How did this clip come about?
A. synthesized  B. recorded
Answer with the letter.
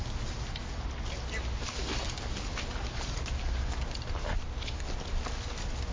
B